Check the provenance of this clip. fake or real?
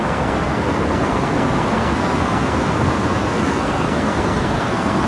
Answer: fake